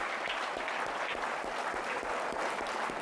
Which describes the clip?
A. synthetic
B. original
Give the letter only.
B